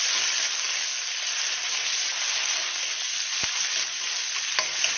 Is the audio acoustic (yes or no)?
yes